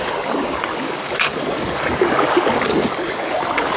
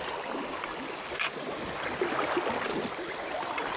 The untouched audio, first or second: second